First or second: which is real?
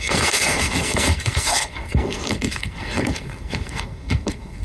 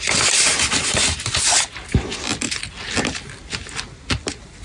second